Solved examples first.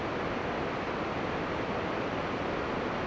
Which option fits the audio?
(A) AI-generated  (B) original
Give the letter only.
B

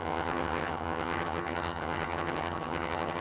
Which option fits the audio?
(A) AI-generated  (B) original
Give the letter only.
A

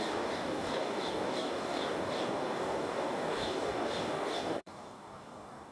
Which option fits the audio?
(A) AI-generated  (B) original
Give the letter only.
A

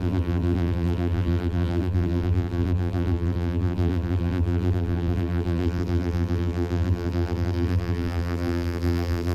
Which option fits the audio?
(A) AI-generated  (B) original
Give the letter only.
A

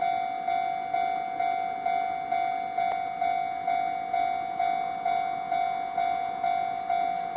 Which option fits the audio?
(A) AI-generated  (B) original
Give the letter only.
B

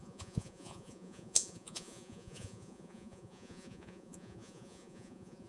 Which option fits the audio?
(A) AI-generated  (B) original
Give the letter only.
A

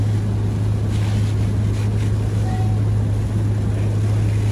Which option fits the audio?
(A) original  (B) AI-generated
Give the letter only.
A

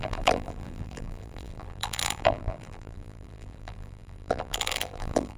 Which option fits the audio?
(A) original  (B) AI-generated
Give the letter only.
B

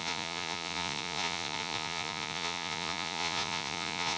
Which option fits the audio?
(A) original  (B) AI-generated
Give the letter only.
B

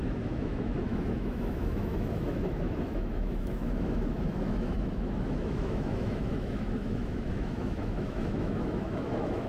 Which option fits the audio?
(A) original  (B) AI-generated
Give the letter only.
B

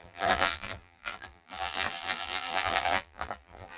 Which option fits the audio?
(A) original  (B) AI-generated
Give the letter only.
B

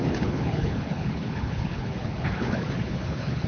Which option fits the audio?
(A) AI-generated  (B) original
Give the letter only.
A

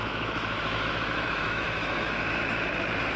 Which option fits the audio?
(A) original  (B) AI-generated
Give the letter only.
B